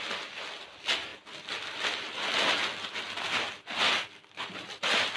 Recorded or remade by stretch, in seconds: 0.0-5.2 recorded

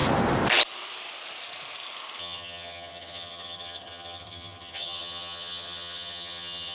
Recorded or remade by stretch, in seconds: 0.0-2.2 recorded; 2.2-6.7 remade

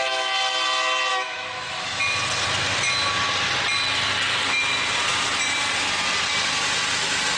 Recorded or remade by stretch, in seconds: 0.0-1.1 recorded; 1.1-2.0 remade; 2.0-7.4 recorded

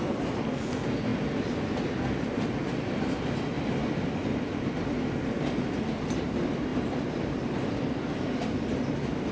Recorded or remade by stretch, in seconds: 0.0-1.1 recorded; 1.1-3.7 remade; 3.7-6.7 recorded; 6.7-8.4 remade; 8.4-9.3 recorded